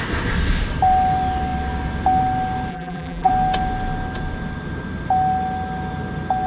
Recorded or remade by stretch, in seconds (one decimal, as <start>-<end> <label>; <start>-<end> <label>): 0.0-2.7 recorded; 2.7-3.3 remade; 3.3-6.5 recorded